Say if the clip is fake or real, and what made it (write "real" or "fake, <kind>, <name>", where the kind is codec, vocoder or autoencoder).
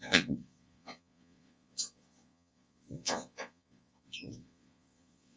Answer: fake, vocoder, Vocos